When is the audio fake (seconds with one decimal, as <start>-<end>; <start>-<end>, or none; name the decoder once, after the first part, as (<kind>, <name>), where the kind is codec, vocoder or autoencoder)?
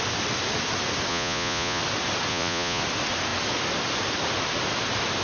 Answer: 1.1-1.8 (vocoder, Vocos); 2.3-2.8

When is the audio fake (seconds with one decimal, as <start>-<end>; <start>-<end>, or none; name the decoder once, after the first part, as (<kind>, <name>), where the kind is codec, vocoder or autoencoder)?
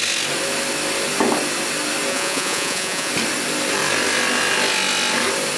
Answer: 2.1-3.1 (vocoder, Vocos)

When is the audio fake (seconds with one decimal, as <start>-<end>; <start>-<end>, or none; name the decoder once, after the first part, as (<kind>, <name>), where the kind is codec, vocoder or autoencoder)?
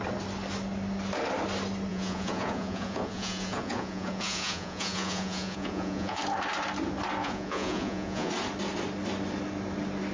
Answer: 1.9-6.2 (vocoder, Vocos); 7.2-8.3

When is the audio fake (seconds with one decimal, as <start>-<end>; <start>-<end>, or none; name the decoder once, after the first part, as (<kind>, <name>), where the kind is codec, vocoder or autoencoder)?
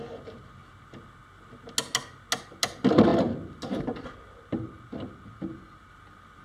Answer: none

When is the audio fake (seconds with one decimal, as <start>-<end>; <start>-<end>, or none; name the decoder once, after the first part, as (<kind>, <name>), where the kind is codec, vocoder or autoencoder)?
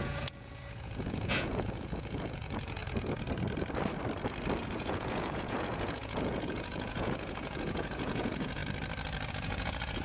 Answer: 0.0-2.8 (vocoder, Vocos); 4.6-8.6; 9.3-10.0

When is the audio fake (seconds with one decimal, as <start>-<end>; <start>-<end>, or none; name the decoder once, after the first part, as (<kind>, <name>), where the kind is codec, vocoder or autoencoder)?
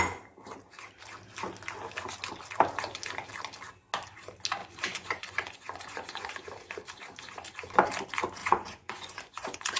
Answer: 4.6-6.3 (vocoder, Vocos); 8.4-9.8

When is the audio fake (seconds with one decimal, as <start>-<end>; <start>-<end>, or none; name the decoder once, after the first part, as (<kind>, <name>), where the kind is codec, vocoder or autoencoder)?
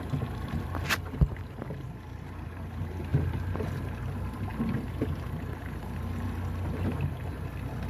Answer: none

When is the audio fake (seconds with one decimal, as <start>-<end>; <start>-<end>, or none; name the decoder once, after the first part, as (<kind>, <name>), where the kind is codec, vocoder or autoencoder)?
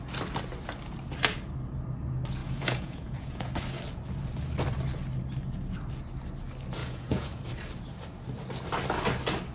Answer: 2.4-3.5 (vocoder, Vocos); 6.8-7.5